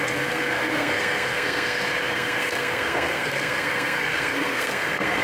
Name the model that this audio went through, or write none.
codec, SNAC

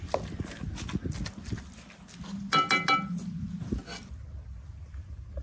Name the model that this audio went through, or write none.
none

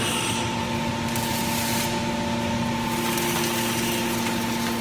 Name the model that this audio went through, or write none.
none